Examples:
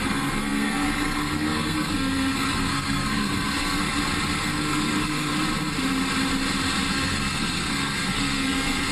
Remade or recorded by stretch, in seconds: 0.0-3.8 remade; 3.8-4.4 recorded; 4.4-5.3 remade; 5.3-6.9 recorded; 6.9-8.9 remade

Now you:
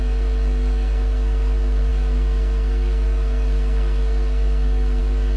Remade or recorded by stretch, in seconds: 0.0-5.4 remade